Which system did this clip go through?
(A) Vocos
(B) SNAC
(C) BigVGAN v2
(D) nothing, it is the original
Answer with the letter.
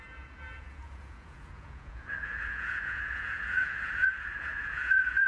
A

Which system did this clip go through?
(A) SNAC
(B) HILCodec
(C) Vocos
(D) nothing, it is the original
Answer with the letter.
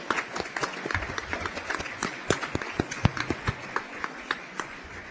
C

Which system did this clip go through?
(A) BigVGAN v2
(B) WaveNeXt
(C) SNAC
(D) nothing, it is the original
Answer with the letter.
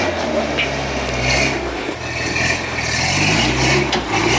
D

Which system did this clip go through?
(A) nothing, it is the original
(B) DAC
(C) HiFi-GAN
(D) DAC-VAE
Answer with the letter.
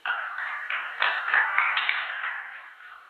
B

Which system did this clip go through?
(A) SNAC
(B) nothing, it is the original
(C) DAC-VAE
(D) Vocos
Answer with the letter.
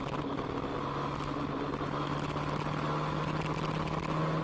B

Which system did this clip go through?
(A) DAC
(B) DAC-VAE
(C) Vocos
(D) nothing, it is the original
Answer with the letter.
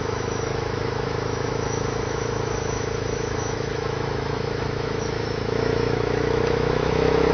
B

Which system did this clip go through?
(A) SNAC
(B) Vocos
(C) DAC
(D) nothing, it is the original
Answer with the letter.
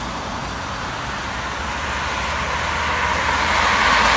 D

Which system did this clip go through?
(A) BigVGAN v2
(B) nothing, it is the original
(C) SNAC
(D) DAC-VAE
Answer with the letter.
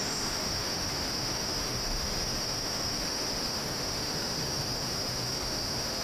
D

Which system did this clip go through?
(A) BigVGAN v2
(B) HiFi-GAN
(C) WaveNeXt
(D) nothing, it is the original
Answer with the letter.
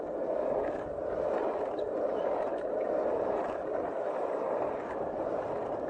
D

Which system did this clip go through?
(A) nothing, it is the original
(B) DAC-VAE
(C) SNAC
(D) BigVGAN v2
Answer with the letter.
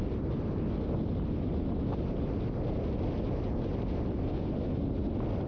A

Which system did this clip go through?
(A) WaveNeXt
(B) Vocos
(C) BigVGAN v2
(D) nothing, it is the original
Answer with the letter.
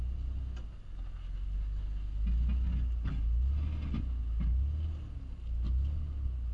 D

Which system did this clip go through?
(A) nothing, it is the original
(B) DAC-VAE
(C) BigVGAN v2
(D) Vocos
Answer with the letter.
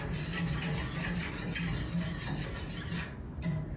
A